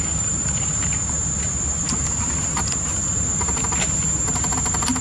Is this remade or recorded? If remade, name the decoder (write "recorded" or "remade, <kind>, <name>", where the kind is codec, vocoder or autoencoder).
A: recorded